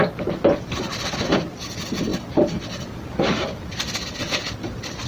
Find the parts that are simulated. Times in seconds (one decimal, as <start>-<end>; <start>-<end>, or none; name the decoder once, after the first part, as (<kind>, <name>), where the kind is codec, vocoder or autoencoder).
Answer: 0.0-5.1 (vocoder, BigVGAN v2)